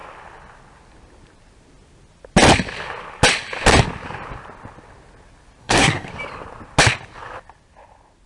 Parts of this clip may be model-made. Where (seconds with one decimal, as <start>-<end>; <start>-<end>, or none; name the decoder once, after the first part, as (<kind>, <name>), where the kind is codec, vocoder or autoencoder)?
5.6-6.1 (codec, SNAC)